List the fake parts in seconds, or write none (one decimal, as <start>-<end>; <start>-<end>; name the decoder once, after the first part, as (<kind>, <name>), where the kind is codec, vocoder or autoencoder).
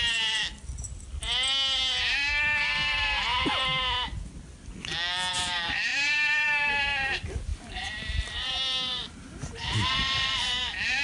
0.0-0.4 (vocoder, BigVGAN v2); 5.3-11.0